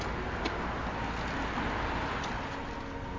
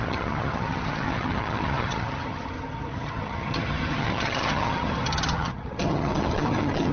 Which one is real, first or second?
first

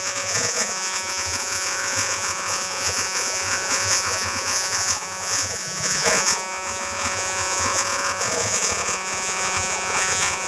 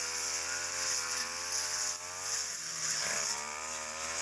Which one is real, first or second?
second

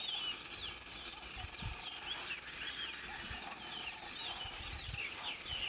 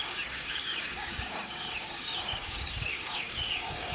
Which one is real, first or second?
first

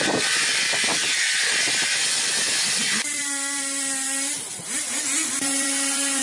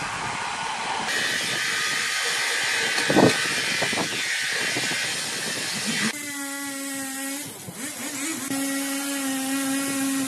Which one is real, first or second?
second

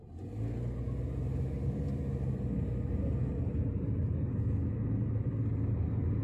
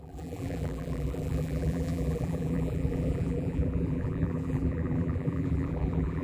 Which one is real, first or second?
first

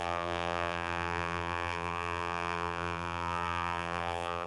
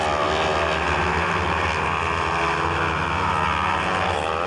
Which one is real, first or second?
second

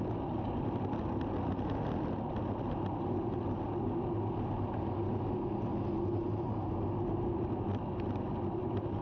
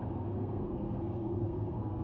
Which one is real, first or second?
first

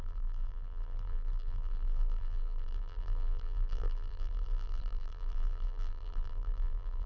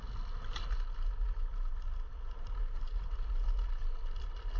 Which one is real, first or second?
second